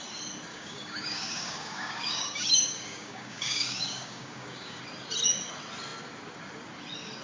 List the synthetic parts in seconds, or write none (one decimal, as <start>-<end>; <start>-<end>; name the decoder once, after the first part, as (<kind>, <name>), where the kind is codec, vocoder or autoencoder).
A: 0.5-4.8 (codec, DAC)